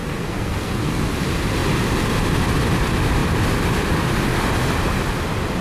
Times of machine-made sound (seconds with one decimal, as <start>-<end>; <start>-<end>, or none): 0.0-1.1